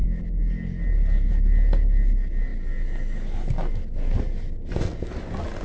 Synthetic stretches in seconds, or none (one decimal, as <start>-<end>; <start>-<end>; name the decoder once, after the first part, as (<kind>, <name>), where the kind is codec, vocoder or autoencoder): none